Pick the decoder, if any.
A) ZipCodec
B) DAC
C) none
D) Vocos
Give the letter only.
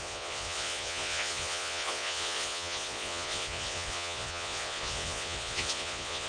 D